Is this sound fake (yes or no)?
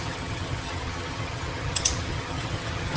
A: yes